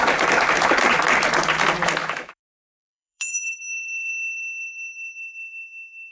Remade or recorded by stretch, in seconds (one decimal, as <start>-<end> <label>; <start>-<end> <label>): 0.0-2.0 recorded; 2.0-4.1 remade; 4.1-6.1 recorded